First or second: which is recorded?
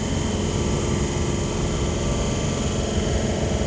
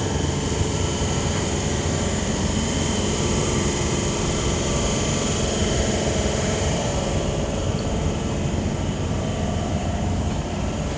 first